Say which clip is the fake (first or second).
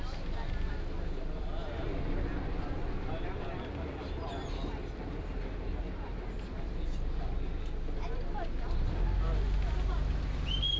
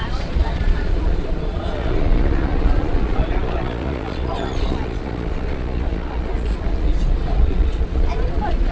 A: second